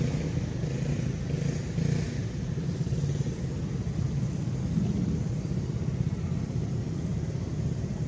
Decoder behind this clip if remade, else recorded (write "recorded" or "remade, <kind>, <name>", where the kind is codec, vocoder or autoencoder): recorded